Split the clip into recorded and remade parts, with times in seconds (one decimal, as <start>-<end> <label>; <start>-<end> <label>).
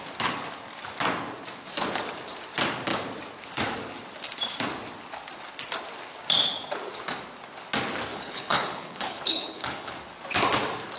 0.0-8.1 recorded; 8.1-9.9 remade; 9.9-11.0 recorded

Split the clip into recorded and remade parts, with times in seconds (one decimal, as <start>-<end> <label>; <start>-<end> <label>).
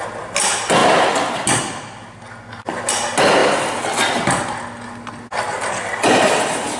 0.0-6.8 recorded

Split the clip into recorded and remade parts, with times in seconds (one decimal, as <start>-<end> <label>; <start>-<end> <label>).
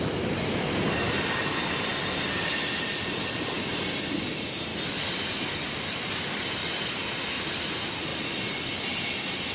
0.0-4.7 recorded; 4.7-6.1 remade; 6.1-6.6 recorded; 6.6-7.5 remade; 7.5-9.5 recorded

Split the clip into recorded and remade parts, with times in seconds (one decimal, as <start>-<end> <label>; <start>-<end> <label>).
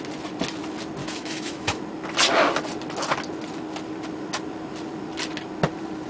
0.0-1.0 recorded; 1.0-1.8 remade; 1.8-6.1 recorded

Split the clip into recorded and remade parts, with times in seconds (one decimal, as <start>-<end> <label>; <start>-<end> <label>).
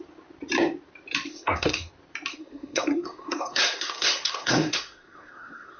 0.0-1.3 recorded; 1.3-1.9 remade; 1.9-2.3 recorded; 2.3-5.8 remade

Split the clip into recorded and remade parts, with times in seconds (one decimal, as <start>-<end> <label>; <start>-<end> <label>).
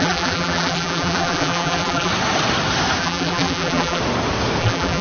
0.0-2.1 remade; 2.1-3.0 recorded; 3.0-4.0 remade; 4.0-4.6 recorded; 4.6-5.0 remade